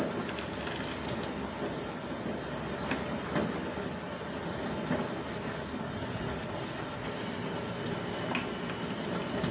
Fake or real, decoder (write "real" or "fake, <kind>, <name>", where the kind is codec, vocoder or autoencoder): real